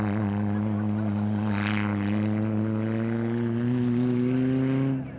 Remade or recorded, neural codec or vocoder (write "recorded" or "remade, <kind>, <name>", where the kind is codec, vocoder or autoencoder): recorded